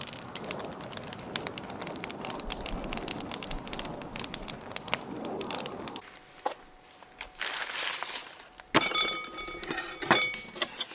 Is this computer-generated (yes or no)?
no